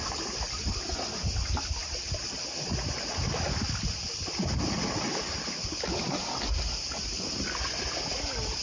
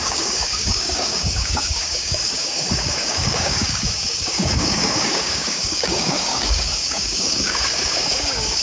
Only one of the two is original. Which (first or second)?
first